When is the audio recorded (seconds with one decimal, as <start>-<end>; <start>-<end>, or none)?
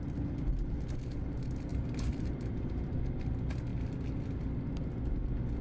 0.0-1.7; 3.0-5.6